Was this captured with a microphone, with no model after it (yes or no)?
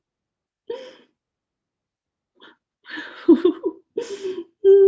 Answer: yes